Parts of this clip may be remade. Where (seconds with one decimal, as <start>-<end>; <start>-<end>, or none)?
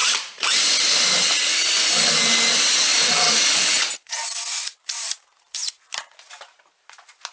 0.0-0.7; 2.9-5.7